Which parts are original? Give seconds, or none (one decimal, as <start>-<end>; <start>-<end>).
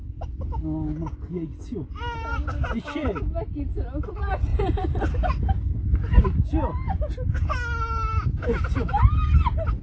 0.0-2.3; 3.1-4.5; 6.2-9.8